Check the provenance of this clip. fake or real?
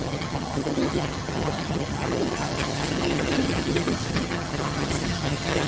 fake